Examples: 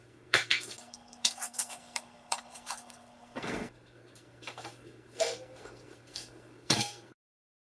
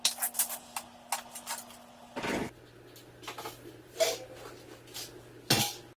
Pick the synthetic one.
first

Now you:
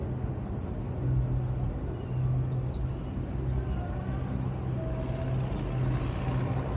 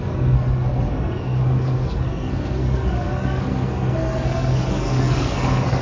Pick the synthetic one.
second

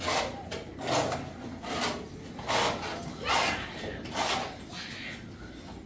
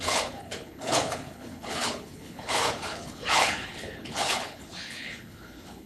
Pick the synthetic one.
second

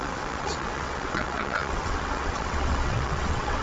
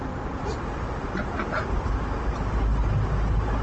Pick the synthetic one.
first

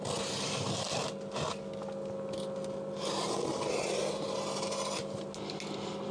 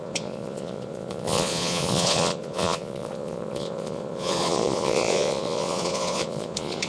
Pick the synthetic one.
second